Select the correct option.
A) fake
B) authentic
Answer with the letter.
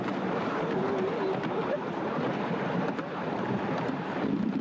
A